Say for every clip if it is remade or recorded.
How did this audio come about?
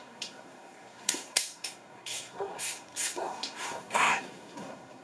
remade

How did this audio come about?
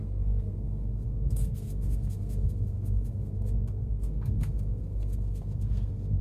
remade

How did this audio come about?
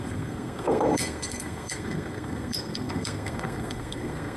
remade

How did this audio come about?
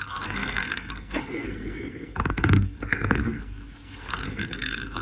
remade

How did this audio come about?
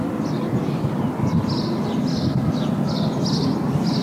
recorded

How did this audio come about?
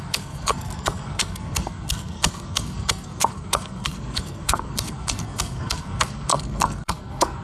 remade